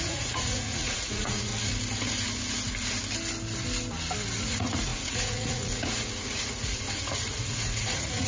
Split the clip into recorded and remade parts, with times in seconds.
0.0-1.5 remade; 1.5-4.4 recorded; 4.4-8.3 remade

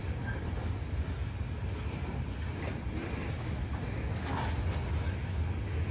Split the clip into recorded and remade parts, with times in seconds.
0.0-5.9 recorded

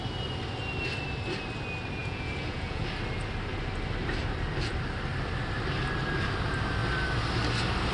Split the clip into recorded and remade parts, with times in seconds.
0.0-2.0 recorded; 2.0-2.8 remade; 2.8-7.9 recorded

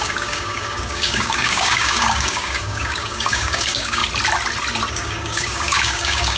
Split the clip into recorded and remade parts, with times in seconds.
0.0-4.0 remade; 4.0-4.9 recorded; 4.9-6.4 remade

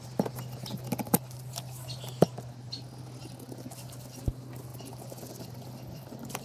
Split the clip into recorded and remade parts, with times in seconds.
0.0-6.4 recorded